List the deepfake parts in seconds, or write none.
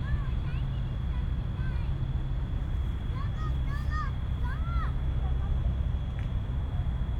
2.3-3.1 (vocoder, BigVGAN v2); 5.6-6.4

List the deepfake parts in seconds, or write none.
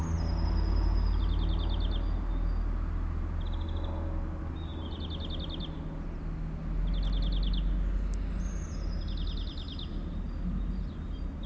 none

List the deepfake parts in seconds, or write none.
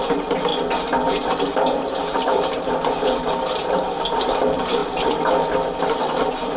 0.0-0.5 (vocoder, BigVGAN v2); 1.1-4.8; 5.8-6.6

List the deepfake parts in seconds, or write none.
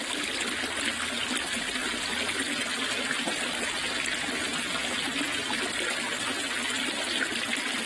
none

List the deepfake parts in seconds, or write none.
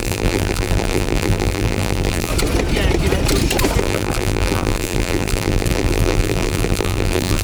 0.0-2.3 (vocoder, BigVGAN v2); 3.8-7.4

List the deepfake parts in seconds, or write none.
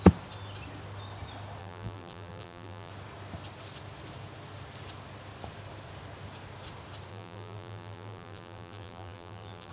1.6-2.9 (vocoder, BigVGAN v2); 7.1-9.7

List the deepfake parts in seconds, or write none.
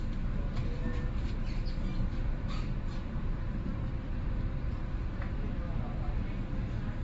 1.9-5.1 (vocoder, BigVGAN v2)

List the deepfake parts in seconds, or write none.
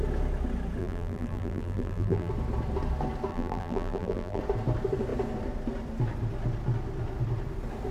0.8-2.3 (vocoder, BigVGAN v2); 3.3-4.4